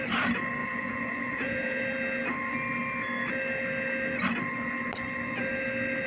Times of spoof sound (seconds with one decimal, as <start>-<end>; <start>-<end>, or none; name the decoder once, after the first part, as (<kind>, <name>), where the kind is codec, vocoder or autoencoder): 0.6-1.8 (vocoder, Vocos)